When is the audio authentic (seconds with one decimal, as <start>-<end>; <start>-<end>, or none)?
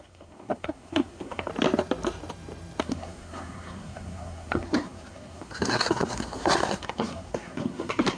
1.5-2.8